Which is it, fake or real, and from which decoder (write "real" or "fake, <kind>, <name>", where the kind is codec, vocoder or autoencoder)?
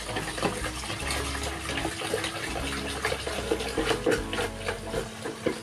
real